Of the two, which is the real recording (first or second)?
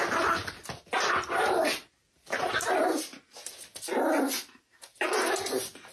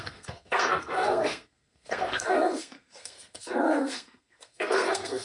first